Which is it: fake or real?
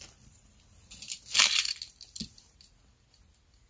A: real